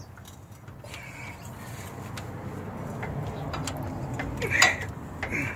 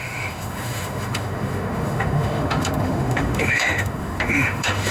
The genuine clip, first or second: first